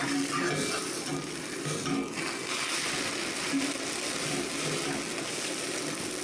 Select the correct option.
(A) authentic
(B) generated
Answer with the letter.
A